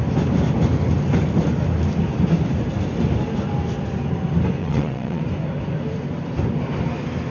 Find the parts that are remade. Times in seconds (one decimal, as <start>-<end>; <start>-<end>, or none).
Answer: 4.6-5.2